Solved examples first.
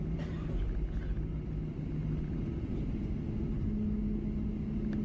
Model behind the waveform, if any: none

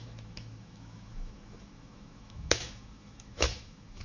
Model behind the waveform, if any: autoencoder, DAC-VAE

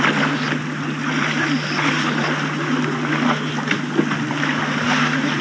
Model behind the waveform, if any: none